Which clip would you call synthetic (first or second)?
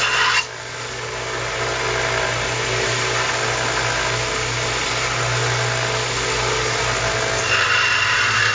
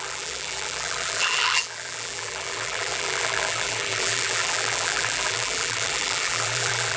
second